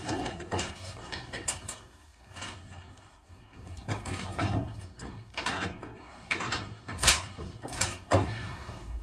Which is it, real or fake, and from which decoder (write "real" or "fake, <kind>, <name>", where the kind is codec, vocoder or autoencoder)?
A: fake, codec, SNAC